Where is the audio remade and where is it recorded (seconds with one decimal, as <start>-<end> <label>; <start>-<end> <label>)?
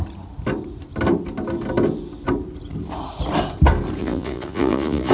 0.0-4.0 recorded; 4.0-5.1 remade